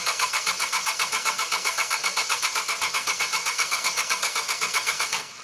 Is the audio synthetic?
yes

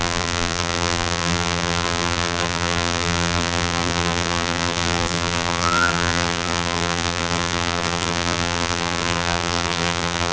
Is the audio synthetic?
yes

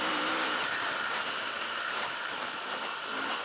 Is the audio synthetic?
yes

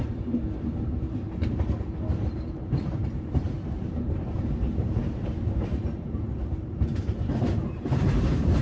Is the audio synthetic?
yes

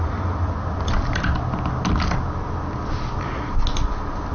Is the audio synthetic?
no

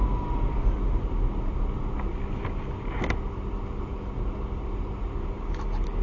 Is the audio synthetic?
no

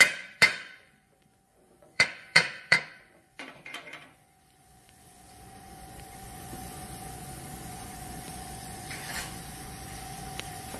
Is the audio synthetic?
yes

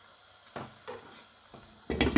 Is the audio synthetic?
no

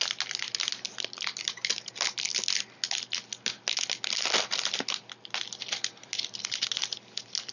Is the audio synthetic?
no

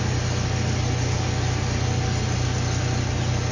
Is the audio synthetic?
no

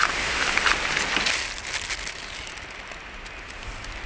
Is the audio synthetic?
no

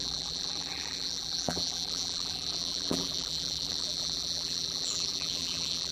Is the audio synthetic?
yes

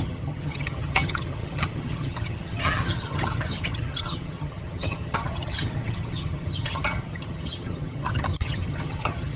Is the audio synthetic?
yes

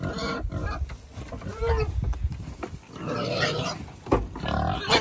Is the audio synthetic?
no